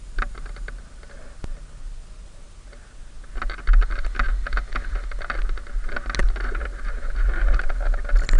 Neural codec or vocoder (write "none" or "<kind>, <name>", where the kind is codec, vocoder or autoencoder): none